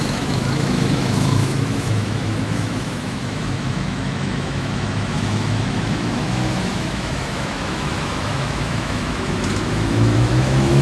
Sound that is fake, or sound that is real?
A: fake